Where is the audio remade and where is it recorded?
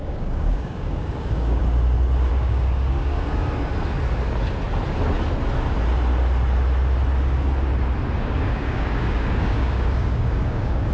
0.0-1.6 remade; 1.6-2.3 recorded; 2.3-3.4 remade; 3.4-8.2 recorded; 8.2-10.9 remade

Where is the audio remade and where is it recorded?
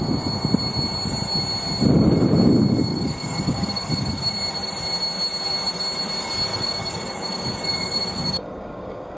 0.0-2.9 recorded; 2.9-4.3 remade; 4.3-6.5 recorded; 6.5-9.2 remade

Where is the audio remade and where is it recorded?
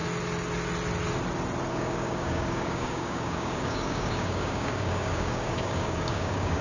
0.0-1.7 recorded; 1.7-6.6 remade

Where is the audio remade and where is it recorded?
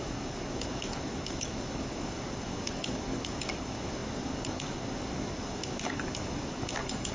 0.0-7.1 remade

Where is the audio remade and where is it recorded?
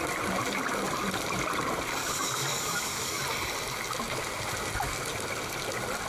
0.0-2.0 recorded; 2.0-3.2 remade; 3.2-6.1 recorded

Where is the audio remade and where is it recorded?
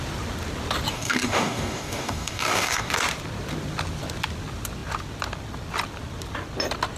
0.0-0.9 recorded; 0.9-2.9 remade; 2.9-7.0 recorded